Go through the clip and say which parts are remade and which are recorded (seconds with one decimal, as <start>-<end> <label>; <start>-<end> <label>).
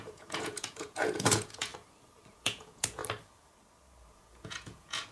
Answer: 0.0-1.7 remade; 1.7-2.3 recorded; 2.3-3.0 remade; 3.0-4.1 recorded; 4.1-5.1 remade